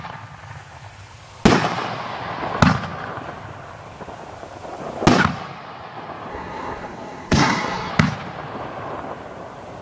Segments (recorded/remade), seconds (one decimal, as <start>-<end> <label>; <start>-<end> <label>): 0.0-6.3 recorded; 6.3-7.9 remade; 7.9-9.8 recorded